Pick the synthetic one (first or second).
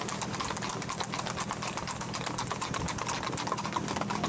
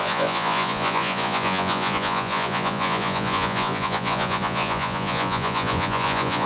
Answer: second